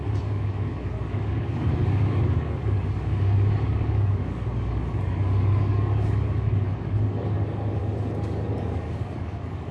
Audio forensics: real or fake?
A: fake